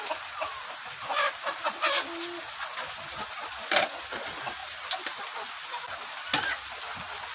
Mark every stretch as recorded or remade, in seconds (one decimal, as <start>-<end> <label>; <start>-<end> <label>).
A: 0.0-4.6 recorded; 4.6-5.2 remade; 5.2-7.3 recorded